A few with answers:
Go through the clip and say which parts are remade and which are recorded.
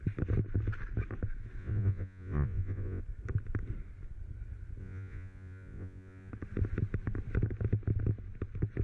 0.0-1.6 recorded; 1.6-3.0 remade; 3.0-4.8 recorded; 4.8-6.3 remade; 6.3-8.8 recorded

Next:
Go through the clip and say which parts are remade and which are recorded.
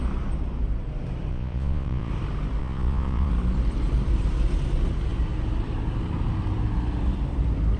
0.0-1.3 recorded; 1.3-2.1 remade; 2.1-2.6 recorded; 2.6-3.3 remade; 3.3-7.8 recorded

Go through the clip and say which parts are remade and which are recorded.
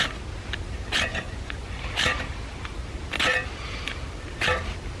0.0-1.1 recorded; 1.1-1.8 remade; 1.8-5.0 recorded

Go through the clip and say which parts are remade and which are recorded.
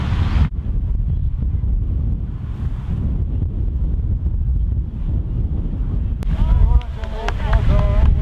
0.0-8.2 recorded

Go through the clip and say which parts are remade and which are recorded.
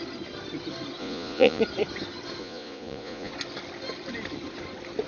0.0-1.0 recorded; 1.0-1.6 remade; 1.6-2.4 recorded; 2.4-3.3 remade; 3.3-5.1 recorded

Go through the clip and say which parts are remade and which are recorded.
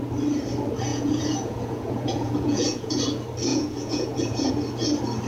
0.0-0.9 recorded; 0.9-3.0 remade; 3.0-3.5 recorded; 3.5-4.5 remade; 4.5-5.3 recorded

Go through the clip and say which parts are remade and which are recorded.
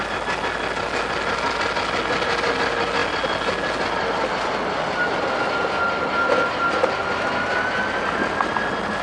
0.0-9.0 recorded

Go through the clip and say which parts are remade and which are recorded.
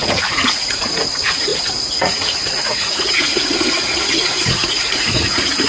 0.0-5.7 remade